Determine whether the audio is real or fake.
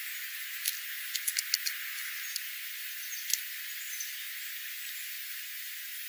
real